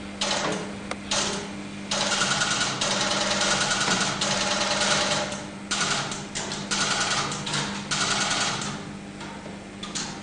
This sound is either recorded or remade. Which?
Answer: recorded